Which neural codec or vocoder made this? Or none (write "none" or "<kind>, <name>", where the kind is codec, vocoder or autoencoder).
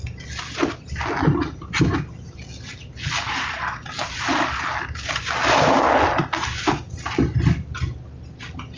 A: none